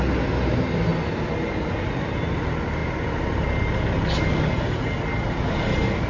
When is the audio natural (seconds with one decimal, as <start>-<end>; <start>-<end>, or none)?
0.0-6.1